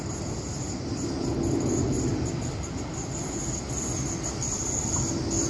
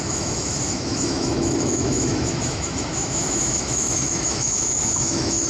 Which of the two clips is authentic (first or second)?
first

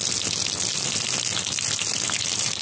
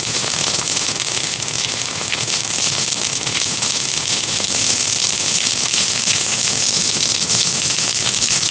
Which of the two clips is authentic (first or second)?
first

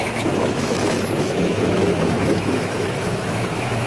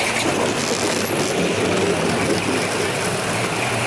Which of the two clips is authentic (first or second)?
second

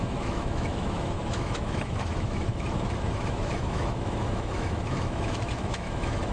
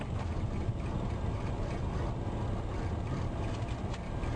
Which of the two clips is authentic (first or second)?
second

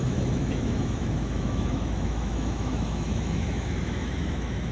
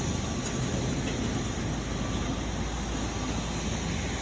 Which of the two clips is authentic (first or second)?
second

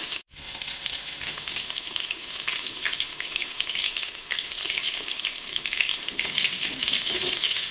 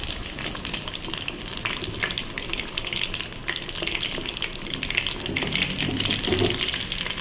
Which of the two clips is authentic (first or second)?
second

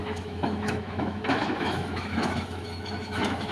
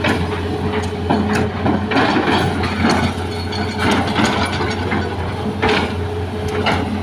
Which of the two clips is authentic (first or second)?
second